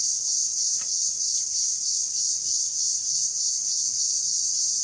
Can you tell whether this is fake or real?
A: real